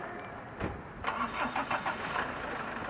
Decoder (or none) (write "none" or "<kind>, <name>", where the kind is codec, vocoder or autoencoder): none